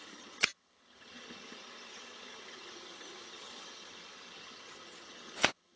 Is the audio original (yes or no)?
no